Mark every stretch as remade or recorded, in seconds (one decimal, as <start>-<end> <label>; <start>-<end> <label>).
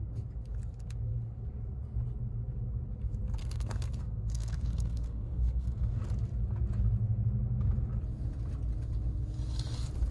0.0-3.4 recorded; 3.4-6.0 remade; 6.0-10.1 recorded